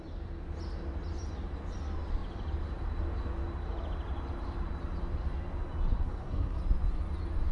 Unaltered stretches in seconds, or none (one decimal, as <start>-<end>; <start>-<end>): 0.0-6.0; 6.6-7.5